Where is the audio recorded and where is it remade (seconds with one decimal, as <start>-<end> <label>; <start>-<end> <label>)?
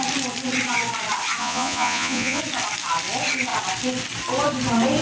0.0-1.4 recorded; 1.4-2.4 remade; 2.4-5.0 recorded